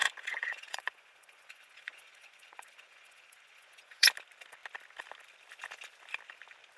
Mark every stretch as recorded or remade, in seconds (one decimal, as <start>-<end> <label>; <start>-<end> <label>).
0.0-4.1 remade; 4.1-6.8 recorded